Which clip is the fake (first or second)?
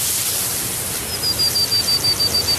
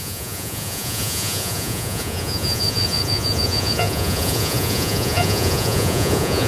second